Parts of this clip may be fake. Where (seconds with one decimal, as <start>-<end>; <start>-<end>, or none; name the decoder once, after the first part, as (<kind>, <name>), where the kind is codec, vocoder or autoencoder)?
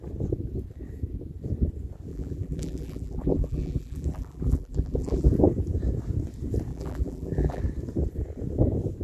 2.1-5.3 (vocoder, BigVGAN v2); 6.7-7.6